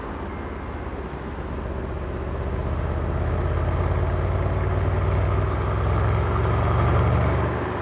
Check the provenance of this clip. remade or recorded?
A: recorded